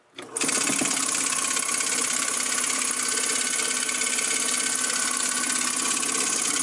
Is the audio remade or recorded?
recorded